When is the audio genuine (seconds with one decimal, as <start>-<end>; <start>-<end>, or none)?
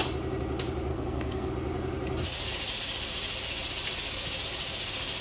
0.0-0.9; 1.5-5.2